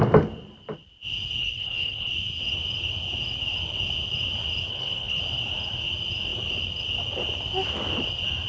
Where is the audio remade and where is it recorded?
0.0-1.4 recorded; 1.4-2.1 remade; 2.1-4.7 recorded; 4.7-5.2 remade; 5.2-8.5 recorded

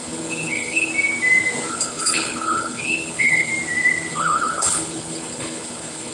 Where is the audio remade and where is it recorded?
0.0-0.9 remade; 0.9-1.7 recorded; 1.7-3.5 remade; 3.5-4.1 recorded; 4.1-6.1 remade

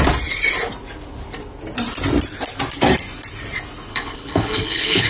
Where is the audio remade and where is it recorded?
0.0-3.9 recorded; 3.9-5.1 remade